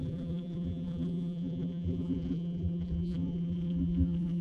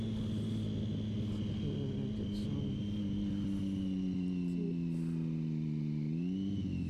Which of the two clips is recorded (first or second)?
second